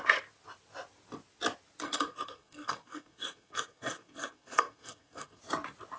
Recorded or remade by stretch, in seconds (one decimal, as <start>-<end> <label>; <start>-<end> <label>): 0.0-1.8 recorded; 1.8-5.4 remade; 5.4-6.0 recorded